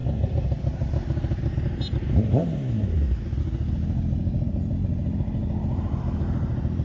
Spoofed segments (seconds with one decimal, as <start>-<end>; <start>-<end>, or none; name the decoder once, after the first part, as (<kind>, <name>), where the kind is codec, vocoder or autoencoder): none